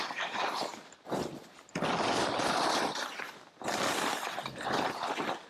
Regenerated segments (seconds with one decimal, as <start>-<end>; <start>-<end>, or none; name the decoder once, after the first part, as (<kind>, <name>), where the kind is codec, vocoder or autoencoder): none